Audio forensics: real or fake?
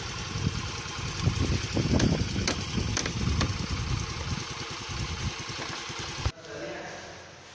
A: real